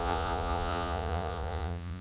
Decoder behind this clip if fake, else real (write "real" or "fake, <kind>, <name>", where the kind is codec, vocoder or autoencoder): fake, vocoder, Vocos